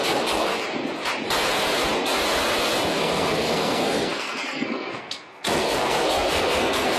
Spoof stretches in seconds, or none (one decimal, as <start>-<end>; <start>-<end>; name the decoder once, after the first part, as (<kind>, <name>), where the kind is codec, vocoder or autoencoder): 0.0-0.5 (codec, SNAC); 2.9-7.0